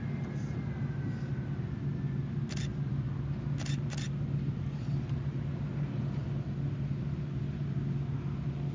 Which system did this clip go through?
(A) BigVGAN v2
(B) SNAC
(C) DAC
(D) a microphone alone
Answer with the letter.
D